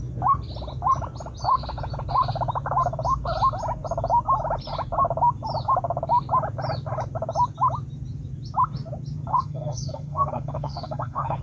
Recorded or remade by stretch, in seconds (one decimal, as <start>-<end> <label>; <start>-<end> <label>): 0.0-9.3 recorded; 9.3-11.4 remade